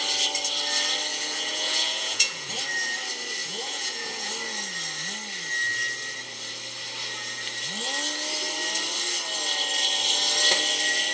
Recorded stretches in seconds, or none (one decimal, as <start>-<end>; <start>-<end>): 0.0-1.1; 2.5-3.4; 4.3-11.1